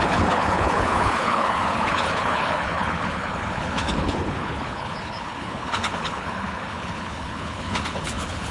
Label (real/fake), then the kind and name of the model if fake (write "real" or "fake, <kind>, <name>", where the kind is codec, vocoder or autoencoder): fake, codec, HILCodec